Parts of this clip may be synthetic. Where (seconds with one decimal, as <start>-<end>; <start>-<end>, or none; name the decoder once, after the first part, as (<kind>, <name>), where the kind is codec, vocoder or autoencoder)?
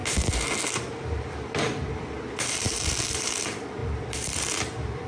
0.0-5.1 (vocoder, BigVGAN v2)